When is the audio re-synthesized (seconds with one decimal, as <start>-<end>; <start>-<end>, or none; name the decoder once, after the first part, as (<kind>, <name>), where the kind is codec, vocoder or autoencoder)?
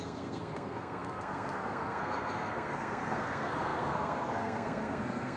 0.0-5.4 (codec, SNAC)